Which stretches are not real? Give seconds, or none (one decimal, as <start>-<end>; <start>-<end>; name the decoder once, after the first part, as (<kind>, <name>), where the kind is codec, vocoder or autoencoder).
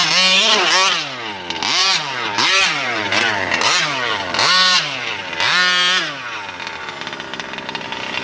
1.8-5.3 (vocoder, BigVGAN v2)